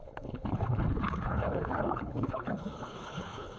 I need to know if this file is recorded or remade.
remade